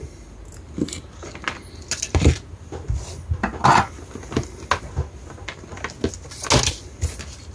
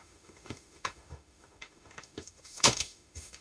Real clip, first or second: first